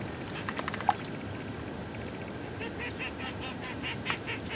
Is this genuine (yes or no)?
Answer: yes